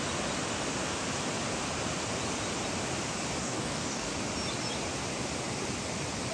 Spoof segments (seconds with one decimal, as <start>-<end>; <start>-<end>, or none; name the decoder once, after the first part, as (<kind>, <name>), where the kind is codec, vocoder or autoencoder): 3.4-4.1 (codec, DAC)

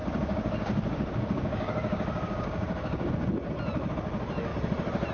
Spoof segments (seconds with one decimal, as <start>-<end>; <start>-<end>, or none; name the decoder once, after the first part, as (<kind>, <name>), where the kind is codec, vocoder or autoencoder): 0.0-3.1 (codec, DAC)

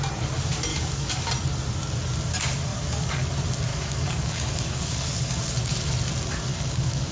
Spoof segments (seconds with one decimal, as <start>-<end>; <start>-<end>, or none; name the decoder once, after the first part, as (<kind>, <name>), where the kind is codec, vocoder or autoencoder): 0.7-1.3 (codec, DAC); 2.7-3.2; 3.7-5.4; 6.5-7.1

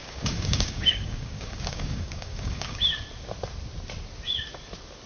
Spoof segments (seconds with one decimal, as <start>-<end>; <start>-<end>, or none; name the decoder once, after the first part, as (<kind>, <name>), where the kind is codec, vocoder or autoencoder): 0.0-2.8 (codec, DAC)